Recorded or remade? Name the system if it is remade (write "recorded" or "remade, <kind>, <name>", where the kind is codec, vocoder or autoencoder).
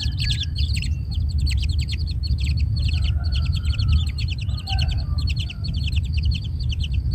remade, vocoder, BigVGAN v2